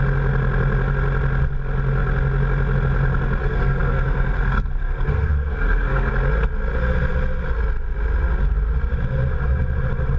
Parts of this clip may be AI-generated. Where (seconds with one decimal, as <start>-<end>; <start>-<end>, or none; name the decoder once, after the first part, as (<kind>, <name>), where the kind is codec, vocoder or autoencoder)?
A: 3.4-6.1 (codec, SNAC)